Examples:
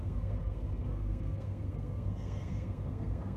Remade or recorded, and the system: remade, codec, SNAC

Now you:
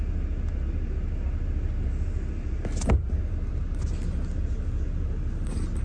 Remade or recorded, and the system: recorded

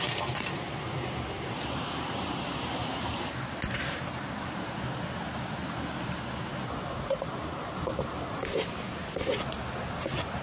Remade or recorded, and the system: recorded